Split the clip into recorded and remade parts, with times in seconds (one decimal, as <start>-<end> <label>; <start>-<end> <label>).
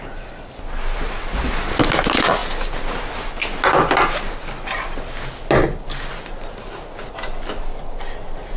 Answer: 0.0-8.6 recorded